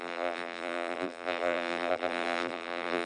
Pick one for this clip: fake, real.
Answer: fake